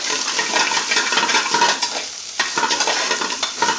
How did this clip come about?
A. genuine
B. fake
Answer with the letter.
A